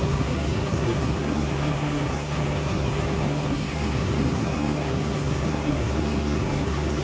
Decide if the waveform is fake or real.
fake